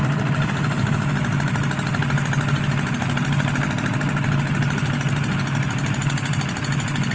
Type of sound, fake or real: real